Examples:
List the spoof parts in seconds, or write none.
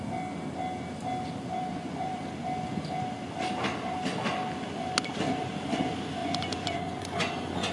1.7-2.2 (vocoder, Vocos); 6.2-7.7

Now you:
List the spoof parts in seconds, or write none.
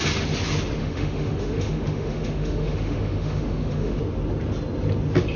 0.8-4.0 (autoencoder, DAC-VAE)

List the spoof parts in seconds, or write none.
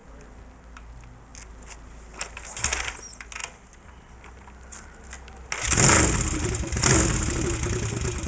none